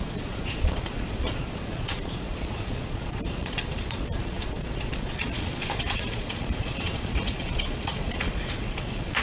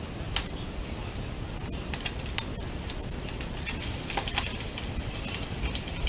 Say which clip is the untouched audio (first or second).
second